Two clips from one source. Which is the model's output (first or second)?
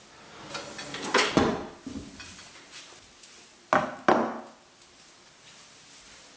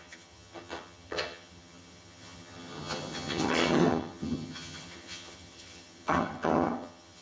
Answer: second